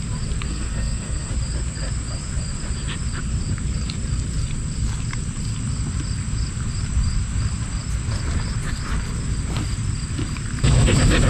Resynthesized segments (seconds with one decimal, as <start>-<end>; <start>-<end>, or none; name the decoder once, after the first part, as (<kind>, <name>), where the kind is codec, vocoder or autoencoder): 0.5-1.3 (codec, SNAC)